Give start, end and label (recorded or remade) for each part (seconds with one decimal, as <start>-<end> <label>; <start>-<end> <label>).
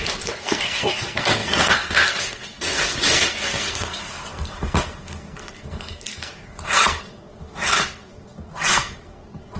0.0-9.6 remade